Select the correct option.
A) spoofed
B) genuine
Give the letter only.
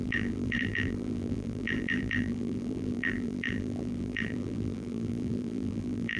A